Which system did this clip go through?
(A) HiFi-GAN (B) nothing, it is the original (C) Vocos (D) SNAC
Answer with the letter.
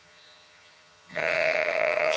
A